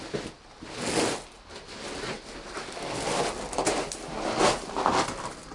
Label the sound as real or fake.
real